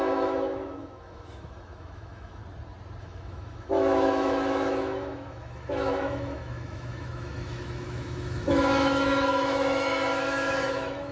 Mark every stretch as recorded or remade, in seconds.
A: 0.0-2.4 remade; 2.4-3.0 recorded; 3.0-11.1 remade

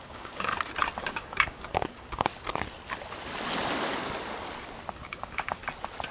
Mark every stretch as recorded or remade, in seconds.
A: 0.0-0.5 remade; 0.5-1.0 recorded; 1.0-2.3 remade; 2.3-4.9 recorded; 4.9-5.6 remade; 5.6-6.1 recorded